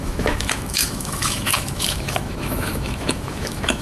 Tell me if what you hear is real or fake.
fake